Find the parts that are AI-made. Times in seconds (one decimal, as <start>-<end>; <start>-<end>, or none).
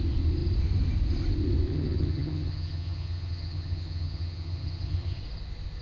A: 1.7-5.2